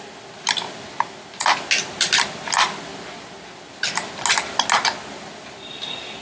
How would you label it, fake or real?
real